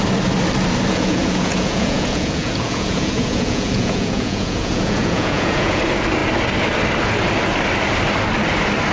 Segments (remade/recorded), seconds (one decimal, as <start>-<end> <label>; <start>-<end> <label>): 0.0-0.9 recorded; 0.9-5.8 remade; 5.8-8.9 recorded